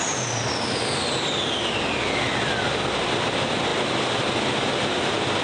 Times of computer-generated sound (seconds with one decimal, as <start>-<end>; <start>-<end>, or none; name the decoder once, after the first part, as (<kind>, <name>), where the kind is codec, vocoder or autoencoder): none